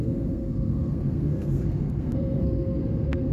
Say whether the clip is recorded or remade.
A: remade